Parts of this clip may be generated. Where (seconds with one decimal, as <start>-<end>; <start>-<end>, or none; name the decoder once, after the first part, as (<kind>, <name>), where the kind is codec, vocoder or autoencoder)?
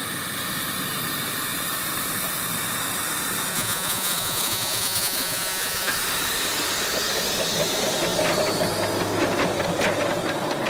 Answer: 3.5-5.9 (vocoder, Vocos)